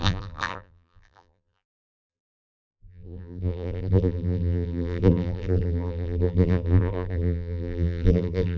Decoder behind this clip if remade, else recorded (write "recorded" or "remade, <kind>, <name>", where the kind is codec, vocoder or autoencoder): remade, vocoder, BigVGAN v2